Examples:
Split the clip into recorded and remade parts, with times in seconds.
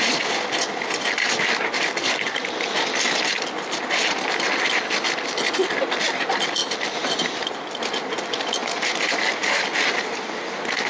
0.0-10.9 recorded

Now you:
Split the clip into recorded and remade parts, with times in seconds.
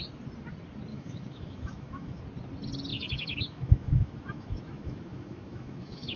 0.0-0.9 recorded; 0.9-2.2 remade; 2.2-2.9 recorded; 2.9-6.2 remade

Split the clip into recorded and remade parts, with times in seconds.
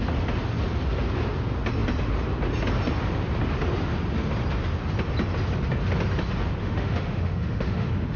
0.0-6.6 recorded; 6.6-8.2 remade